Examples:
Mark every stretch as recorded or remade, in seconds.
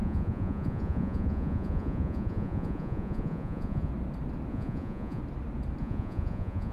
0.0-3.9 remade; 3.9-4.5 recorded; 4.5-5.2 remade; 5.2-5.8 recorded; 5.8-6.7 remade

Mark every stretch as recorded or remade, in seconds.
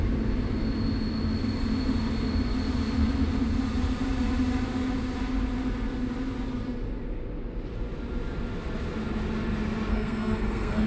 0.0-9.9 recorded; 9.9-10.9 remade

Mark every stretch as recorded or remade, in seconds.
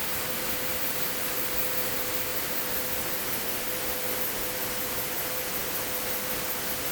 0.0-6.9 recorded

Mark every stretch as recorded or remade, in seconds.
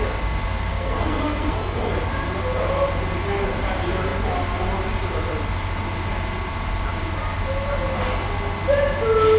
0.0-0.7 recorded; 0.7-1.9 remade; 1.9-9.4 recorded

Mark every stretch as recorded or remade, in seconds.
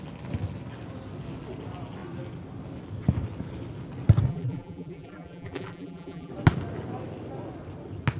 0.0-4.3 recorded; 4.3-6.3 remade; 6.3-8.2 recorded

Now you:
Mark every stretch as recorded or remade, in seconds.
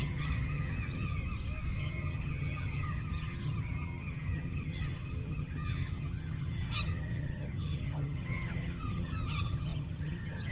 0.0-1.2 remade; 1.2-1.8 recorded; 1.8-10.5 remade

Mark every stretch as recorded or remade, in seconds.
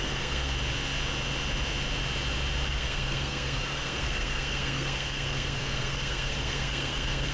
0.0-0.5 remade; 0.5-2.7 recorded; 2.7-7.3 remade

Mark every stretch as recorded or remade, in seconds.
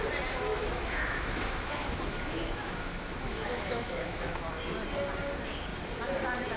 0.0-0.5 recorded; 0.5-4.5 remade; 4.5-6.6 recorded